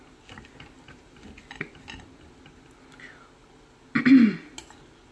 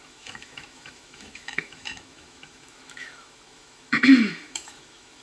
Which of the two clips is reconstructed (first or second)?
second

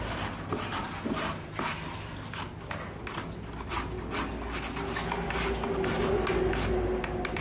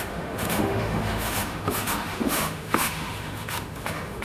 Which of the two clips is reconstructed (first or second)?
second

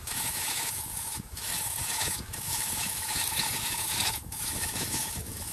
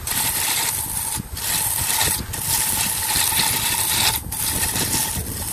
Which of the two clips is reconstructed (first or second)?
first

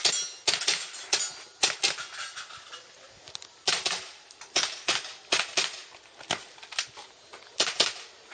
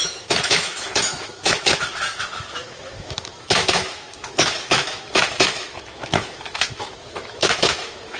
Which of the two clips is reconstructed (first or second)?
second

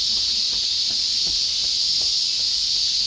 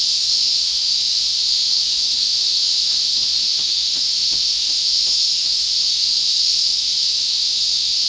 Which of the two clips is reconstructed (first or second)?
second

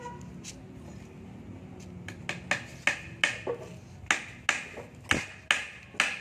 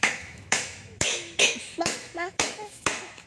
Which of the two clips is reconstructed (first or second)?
second